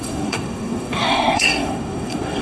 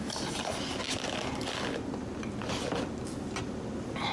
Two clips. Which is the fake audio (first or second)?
first